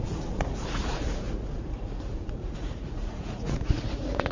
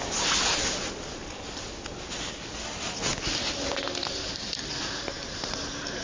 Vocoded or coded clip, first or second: first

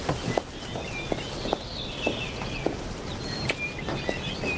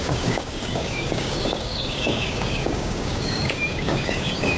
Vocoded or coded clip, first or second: second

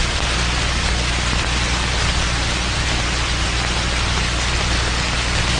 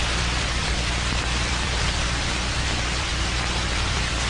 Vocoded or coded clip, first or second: second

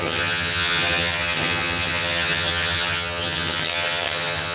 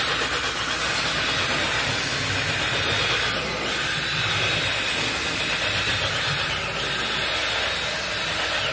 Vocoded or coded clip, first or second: first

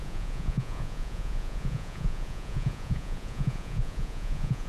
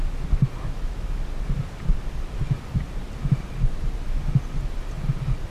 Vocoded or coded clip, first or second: first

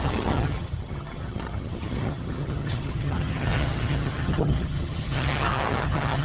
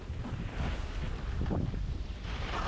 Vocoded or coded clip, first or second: first